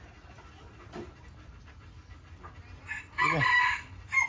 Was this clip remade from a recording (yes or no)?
no